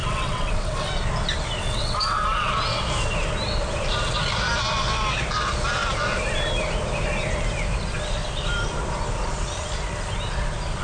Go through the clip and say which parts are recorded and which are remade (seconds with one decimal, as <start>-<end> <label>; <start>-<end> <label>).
0.0-0.9 remade; 0.9-1.6 recorded; 1.6-2.5 remade; 2.5-10.8 recorded